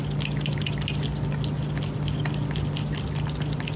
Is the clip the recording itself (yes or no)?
yes